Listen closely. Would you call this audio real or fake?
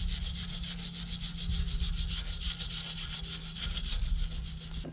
real